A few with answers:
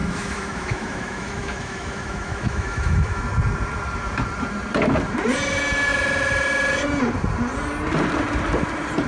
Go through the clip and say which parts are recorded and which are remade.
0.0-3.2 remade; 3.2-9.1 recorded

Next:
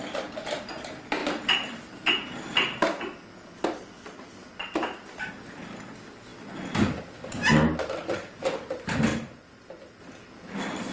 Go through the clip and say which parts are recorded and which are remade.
0.0-10.9 recorded

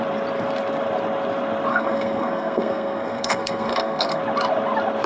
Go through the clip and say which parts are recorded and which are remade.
0.0-1.7 recorded; 1.7-4.2 remade; 4.2-5.1 recorded

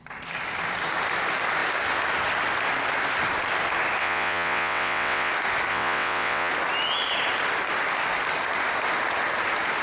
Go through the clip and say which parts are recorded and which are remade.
0.0-4.0 recorded; 4.0-5.3 remade; 5.3-5.7 recorded; 5.7-6.5 remade; 6.5-9.8 recorded

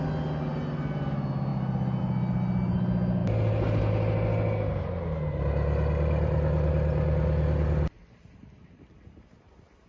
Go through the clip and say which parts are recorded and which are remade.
0.0-9.9 recorded

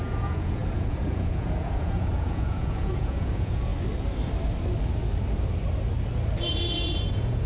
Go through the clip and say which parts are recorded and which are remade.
0.0-3.7 remade; 3.7-7.1 recorded; 7.1-7.5 remade